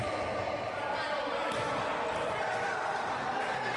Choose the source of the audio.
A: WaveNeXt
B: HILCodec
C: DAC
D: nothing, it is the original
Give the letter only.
D